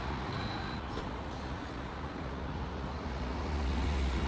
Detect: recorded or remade remade